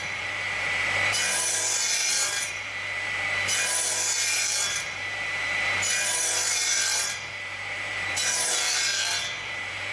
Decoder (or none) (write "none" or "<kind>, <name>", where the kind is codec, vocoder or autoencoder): vocoder, BigVGAN v2